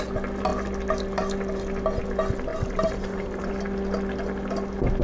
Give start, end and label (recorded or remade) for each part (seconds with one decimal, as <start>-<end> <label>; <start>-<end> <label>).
0.0-2.5 recorded; 2.5-3.5 remade; 3.5-5.0 recorded